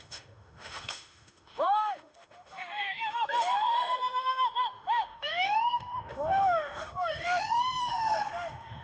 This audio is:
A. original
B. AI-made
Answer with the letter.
B